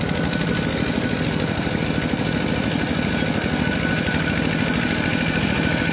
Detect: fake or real real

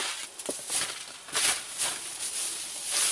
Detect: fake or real real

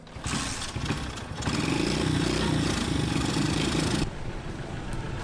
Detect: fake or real real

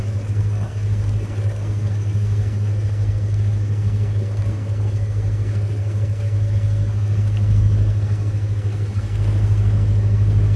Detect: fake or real fake